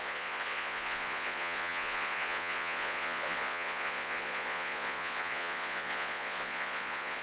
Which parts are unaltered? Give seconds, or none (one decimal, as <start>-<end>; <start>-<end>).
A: none